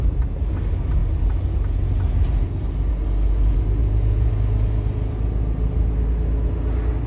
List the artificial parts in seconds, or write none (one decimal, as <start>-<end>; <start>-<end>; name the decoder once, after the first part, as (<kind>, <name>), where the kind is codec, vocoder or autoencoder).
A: 3.8-4.3 (vocoder, Vocos)